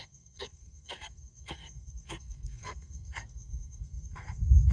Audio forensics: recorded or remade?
remade